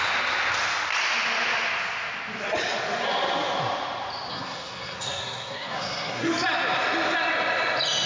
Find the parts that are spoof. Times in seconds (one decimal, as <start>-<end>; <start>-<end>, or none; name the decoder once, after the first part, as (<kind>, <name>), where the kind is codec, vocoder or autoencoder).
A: 4.3-6.3 (codec, SNAC)